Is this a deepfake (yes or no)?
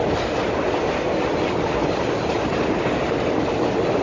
no